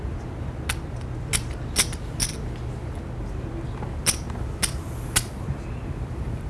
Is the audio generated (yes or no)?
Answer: no